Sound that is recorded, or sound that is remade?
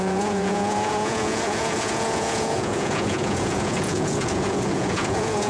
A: remade